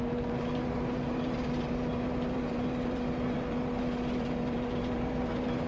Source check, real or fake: fake